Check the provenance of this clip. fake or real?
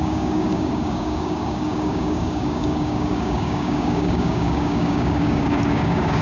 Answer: fake